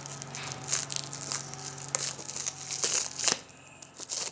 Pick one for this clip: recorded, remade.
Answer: recorded